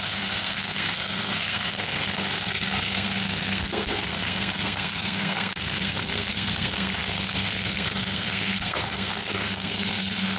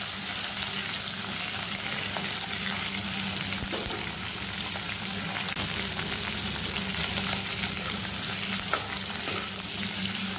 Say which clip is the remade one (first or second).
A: first